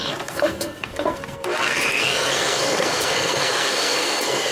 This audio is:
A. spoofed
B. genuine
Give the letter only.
A